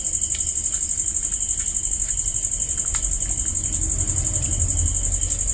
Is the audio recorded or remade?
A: recorded